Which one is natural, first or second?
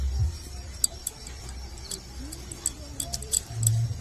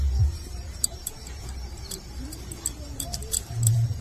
first